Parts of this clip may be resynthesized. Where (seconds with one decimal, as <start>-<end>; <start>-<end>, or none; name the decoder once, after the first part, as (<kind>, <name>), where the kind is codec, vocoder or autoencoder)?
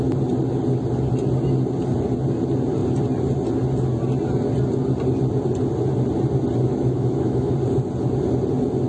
6.7-7.5 (autoencoder, DAC-VAE)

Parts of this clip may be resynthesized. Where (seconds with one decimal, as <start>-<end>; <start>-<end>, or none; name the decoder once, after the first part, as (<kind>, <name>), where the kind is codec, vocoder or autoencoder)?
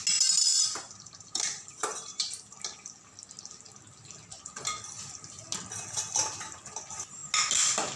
0.5-2.3 (vocoder, BigVGAN v2)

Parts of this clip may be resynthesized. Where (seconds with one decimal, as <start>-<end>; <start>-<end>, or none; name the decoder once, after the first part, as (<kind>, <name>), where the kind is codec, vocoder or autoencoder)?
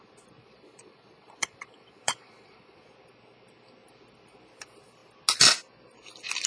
0.4-2.9 (vocoder, Vocos)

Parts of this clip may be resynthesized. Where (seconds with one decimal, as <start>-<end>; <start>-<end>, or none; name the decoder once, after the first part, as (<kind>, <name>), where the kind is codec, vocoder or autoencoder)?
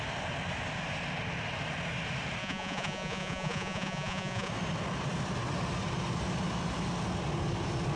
2.4-4.5 (vocoder, Vocos)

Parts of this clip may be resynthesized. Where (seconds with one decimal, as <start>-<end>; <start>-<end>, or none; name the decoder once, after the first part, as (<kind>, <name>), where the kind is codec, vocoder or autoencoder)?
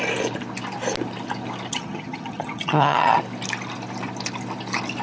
1.7-3.2 (vocoder, HiFi-GAN)